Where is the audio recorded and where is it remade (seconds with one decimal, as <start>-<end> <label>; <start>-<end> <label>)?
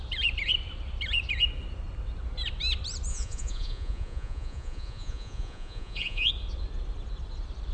0.0-3.1 recorded; 3.1-6.3 remade; 6.3-7.7 recorded